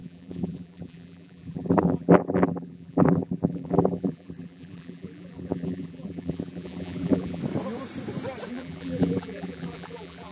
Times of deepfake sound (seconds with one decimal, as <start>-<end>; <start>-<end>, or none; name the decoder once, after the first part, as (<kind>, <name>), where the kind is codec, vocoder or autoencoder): 0.0-7.4 (vocoder, BigVGAN v2); 8.5-10.3